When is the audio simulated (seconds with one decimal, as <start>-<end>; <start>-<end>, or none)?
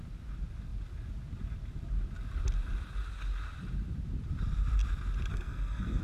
5.3-6.0